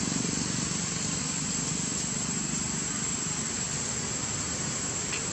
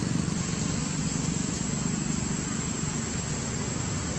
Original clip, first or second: second